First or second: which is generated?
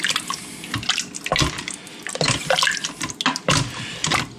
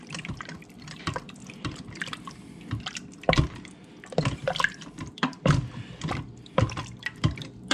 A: second